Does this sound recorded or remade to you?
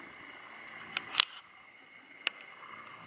recorded